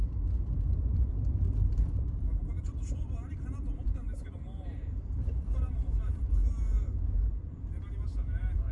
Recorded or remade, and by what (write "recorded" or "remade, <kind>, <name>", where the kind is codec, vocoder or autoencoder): remade, vocoder, BigVGAN v2